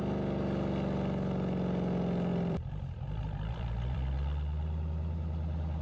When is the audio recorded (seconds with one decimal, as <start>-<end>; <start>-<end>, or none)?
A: 0.0-2.3